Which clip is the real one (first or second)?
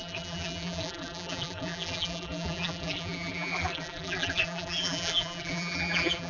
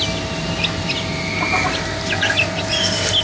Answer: second